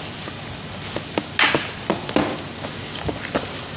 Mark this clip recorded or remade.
recorded